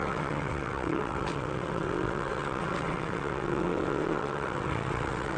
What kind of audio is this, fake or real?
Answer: fake